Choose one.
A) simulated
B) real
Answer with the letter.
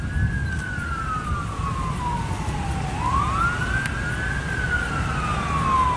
B